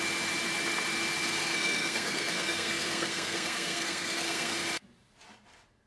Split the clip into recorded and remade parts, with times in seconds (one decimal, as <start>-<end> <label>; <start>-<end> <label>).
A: 0.0-1.4 recorded; 1.4-4.6 remade; 4.6-5.9 recorded